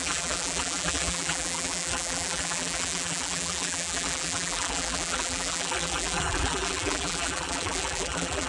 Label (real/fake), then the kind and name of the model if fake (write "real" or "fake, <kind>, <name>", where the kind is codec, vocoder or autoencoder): fake, vocoder, BigVGAN v2